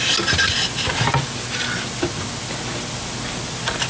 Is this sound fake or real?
real